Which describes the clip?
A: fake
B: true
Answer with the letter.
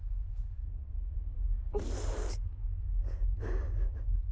B